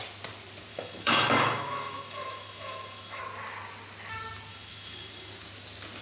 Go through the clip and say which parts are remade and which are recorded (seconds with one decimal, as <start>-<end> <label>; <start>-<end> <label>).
0.0-0.7 recorded; 0.7-3.2 remade; 3.2-4.5 recorded; 4.5-5.3 remade; 5.3-6.0 recorded